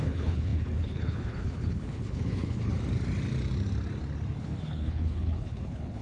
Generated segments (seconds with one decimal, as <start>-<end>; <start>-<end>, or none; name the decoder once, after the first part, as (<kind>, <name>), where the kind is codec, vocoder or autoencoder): 0.0-2.7 (codec, HILCodec); 4.4-6.0